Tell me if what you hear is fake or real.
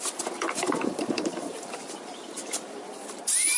fake